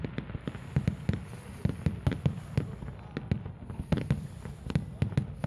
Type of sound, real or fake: real